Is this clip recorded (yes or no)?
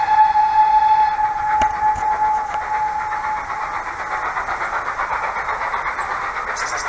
yes